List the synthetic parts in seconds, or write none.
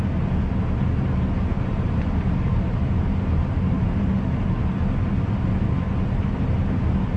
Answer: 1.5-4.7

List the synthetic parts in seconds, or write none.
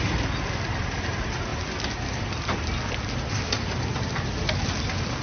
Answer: none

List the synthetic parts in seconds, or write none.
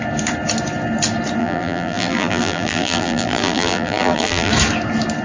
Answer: 1.4-4.5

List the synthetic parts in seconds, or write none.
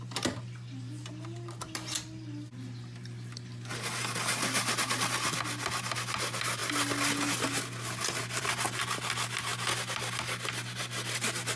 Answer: none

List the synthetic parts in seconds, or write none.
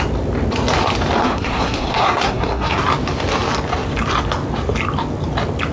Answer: 1.2-2.8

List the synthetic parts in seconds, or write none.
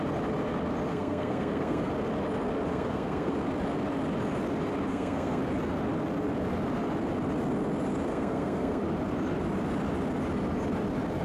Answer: 0.9-1.9; 2.7-3.3; 4.9-5.4; 8.1-8.8